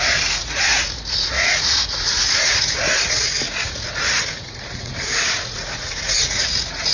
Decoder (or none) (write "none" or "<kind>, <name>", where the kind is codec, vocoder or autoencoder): vocoder, Vocos